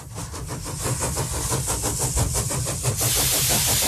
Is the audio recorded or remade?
recorded